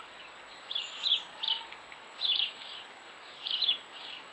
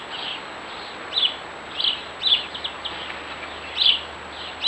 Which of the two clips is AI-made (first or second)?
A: first